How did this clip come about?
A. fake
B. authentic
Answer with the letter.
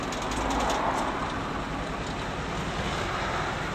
B